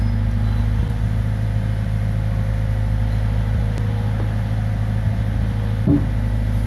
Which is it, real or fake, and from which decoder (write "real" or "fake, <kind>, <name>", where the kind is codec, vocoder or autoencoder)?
real